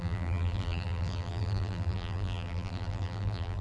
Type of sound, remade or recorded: remade